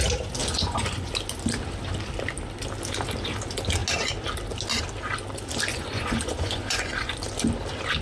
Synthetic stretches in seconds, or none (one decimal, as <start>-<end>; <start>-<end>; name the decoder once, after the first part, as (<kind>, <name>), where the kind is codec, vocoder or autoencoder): 0.4-1.1 (vocoder, Vocos); 5.7-7.2